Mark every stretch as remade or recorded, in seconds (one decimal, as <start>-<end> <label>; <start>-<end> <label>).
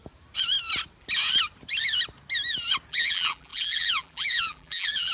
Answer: 0.0-2.9 recorded; 2.9-5.1 remade